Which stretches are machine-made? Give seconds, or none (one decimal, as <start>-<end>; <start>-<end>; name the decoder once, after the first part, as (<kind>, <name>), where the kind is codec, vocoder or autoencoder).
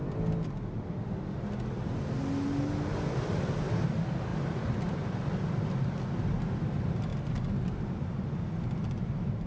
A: 4.3-5.9 (vocoder, BigVGAN v2)